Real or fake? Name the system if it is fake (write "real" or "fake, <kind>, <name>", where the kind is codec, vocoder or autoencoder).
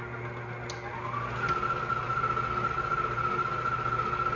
real